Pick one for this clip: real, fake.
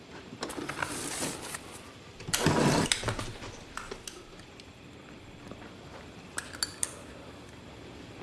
real